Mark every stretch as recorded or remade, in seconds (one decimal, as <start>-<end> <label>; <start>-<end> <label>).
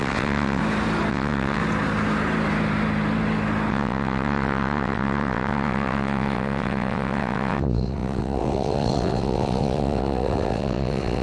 0.0-0.6 remade; 0.6-1.1 recorded; 1.1-1.6 remade; 1.6-3.7 recorded; 3.7-11.2 remade